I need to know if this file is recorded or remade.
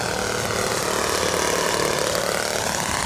recorded